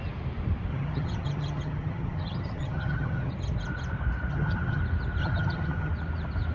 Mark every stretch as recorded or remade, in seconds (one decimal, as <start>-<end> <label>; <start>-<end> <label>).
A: 0.0-0.7 recorded; 0.7-3.3 remade; 3.3-4.3 recorded; 4.3-4.8 remade; 4.8-5.2 recorded; 5.2-5.9 remade; 5.9-6.5 recorded